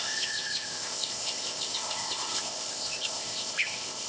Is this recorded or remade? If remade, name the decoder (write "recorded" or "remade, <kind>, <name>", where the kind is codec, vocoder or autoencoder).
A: remade, codec, ZipCodec